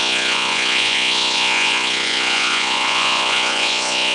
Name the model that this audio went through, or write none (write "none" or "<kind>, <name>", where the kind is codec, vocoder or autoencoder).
vocoder, Vocos